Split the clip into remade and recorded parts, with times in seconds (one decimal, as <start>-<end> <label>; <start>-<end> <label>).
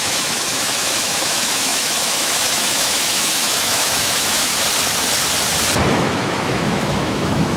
0.0-4.5 remade; 4.5-5.9 recorded; 5.9-7.6 remade